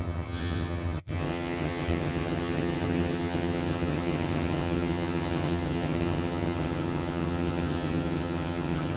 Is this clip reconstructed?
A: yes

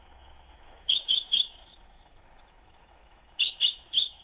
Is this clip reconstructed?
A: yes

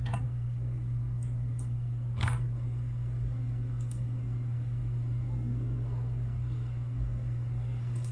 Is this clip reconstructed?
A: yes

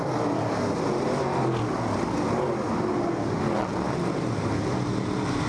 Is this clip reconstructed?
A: no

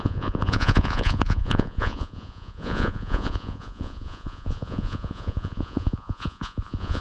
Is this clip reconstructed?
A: yes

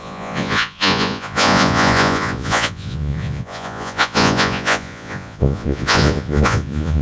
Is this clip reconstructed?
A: yes